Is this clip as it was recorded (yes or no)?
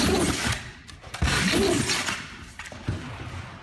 yes